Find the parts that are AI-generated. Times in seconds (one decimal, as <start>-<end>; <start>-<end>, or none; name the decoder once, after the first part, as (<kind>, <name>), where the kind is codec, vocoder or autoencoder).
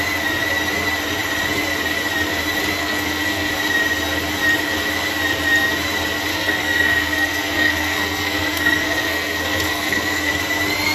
2.8-3.5 (codec, SNAC); 6.3-10.3